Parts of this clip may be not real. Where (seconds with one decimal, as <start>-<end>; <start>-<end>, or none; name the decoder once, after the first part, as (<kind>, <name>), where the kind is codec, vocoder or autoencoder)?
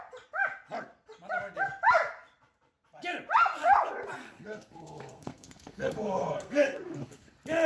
4.2-7.3 (codec, SNAC)